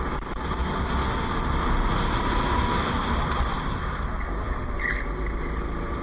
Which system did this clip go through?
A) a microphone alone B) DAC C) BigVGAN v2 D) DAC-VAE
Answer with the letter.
A